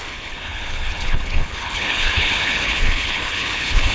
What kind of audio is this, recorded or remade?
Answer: remade